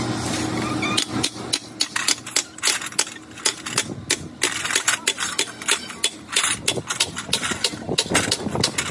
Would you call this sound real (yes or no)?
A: yes